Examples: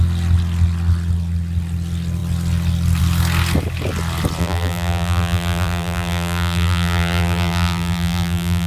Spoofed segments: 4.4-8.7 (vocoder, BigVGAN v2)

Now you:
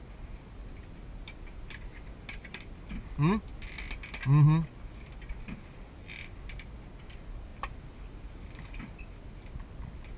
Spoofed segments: none

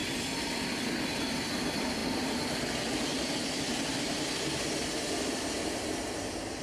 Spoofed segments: none

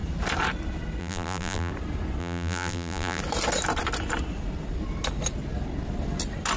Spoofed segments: 1.0-1.7 (vocoder, BigVGAN v2); 2.2-3.2

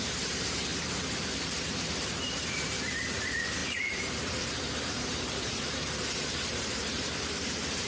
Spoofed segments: 0.0-7.9 (vocoder, BigVGAN v2)